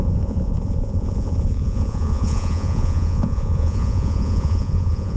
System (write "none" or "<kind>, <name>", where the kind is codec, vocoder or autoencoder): vocoder, Vocos